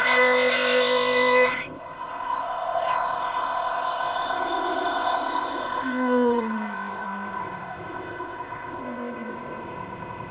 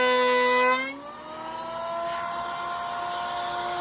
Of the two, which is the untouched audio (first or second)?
second